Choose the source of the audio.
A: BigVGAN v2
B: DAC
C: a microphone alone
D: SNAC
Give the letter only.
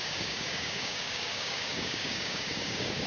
B